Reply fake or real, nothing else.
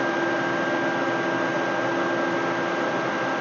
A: real